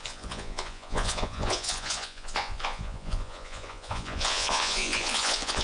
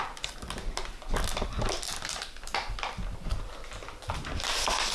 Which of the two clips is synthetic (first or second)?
first